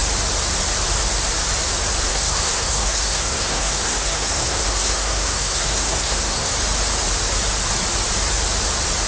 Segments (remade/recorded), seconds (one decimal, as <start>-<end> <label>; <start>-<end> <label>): 0.0-2.1 recorded; 2.1-6.5 remade; 6.5-9.1 recorded